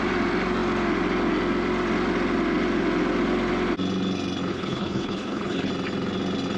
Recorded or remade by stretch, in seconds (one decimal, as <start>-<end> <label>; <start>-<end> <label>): 0.0-4.5 recorded; 4.5-5.7 remade; 5.7-6.6 recorded